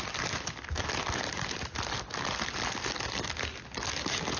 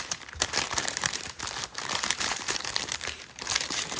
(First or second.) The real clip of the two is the first